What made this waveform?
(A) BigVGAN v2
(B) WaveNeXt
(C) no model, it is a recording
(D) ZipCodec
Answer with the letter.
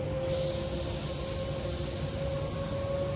C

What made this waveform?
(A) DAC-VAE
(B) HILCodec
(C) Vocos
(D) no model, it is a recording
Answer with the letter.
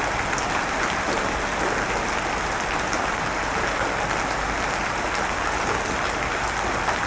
D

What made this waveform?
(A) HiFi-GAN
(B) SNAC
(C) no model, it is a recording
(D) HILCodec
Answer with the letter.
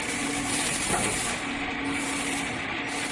C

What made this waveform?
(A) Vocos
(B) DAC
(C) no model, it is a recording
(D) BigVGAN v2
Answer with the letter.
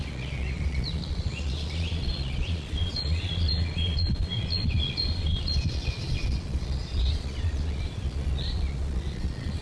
A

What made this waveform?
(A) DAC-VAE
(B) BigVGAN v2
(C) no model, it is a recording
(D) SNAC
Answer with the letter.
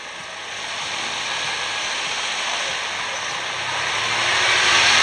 C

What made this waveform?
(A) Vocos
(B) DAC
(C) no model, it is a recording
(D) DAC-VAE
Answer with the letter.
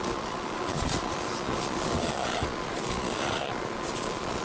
A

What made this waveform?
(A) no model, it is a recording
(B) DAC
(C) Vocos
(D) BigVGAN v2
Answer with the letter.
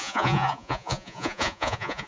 C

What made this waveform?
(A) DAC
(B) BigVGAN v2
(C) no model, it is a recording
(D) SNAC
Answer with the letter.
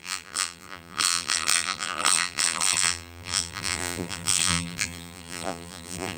B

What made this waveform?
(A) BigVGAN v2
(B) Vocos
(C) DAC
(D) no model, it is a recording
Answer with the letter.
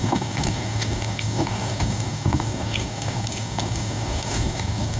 C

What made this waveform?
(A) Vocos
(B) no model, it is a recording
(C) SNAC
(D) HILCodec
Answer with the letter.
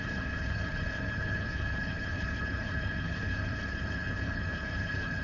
D